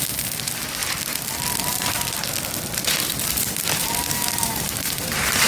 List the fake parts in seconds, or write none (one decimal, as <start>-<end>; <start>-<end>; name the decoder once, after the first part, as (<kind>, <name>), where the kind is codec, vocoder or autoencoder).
none